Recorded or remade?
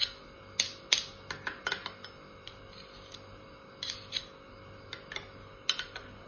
recorded